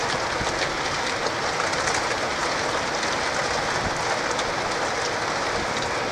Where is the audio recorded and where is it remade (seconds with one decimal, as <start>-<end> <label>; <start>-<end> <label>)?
0.0-6.1 recorded